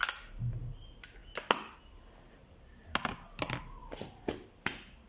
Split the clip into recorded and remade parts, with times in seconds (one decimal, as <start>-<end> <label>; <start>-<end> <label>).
0.0-5.1 recorded